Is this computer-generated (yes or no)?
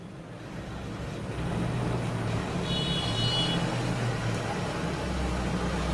no